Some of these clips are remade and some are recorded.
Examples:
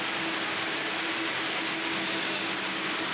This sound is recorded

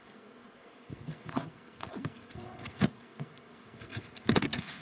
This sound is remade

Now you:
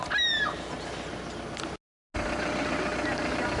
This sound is recorded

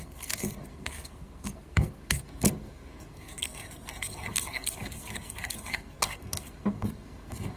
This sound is remade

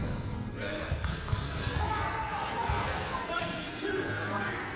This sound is remade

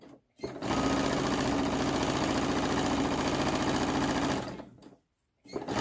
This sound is recorded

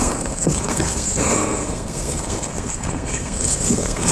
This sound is remade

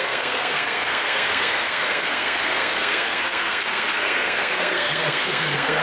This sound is remade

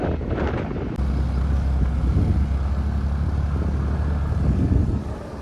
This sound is recorded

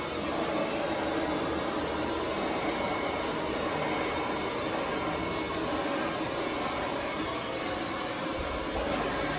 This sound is recorded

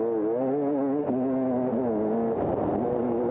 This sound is recorded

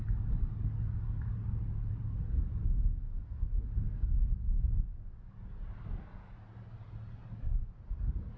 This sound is recorded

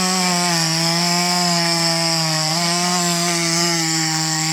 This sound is remade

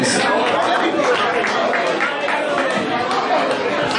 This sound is recorded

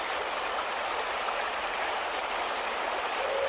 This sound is recorded